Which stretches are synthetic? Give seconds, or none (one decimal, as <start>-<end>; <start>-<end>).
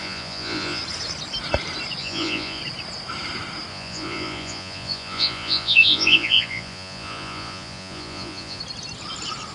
0.0-0.8; 2.0-2.6; 3.7-8.6